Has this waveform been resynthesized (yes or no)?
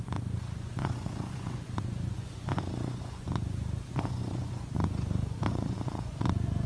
yes